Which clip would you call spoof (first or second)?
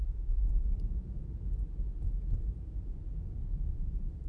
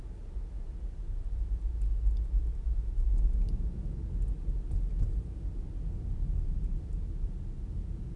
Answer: first